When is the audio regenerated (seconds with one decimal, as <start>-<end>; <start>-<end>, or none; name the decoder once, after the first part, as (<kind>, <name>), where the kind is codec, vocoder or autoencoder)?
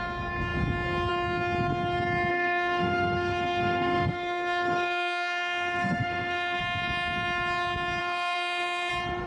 2.3-6.6 (autoencoder, DAC-VAE); 8.0-8.9